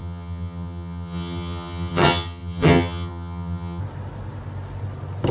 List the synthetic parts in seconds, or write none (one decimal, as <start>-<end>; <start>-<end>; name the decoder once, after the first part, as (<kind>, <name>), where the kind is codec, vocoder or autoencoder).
0.0-3.8 (vocoder, HiFi-GAN)